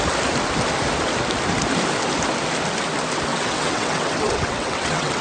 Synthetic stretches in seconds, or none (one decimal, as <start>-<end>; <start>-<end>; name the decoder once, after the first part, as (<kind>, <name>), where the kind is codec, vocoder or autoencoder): 3.3-5.2 (vocoder, WaveNeXt)